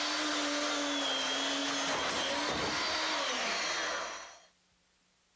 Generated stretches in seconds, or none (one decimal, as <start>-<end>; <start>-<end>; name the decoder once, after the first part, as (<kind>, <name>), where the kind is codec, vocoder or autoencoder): none